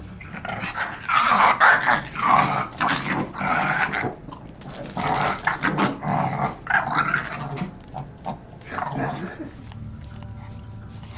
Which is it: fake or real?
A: real